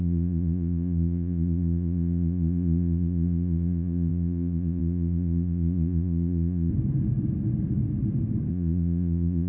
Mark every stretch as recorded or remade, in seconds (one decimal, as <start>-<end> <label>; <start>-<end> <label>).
0.0-6.7 remade; 6.7-8.5 recorded; 8.5-9.5 remade